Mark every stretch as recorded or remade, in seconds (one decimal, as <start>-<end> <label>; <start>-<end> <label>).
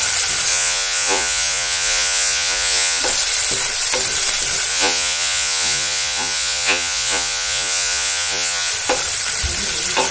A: 0.0-0.5 recorded; 0.5-3.0 remade; 3.0-4.7 recorded; 4.7-8.7 remade; 8.7-10.1 recorded